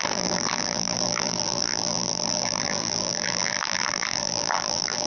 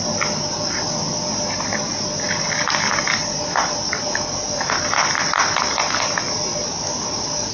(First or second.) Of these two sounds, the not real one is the first